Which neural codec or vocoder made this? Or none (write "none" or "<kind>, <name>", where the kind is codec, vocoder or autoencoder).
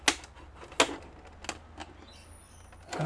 none